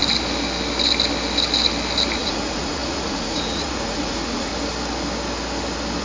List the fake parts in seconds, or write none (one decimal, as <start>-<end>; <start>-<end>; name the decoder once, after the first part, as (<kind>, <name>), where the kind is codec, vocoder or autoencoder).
2.2-4.5 (vocoder, Vocos)